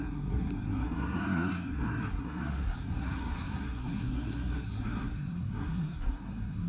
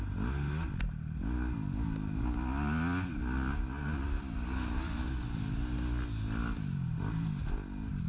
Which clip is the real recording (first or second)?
second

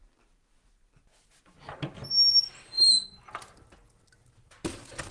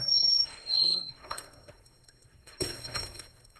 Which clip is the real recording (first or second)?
first